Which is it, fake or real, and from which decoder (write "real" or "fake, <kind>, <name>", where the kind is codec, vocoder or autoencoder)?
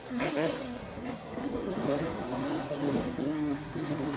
fake, codec, SNAC